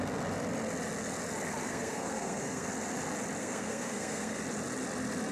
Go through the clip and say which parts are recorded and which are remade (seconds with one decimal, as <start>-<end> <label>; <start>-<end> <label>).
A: 0.0-1.6 recorded; 1.6-2.7 remade; 2.7-3.4 recorded; 3.4-4.4 remade; 4.4-5.3 recorded